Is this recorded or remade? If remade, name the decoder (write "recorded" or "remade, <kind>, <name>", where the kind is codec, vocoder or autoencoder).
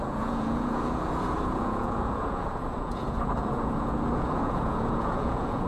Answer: remade, vocoder, Vocos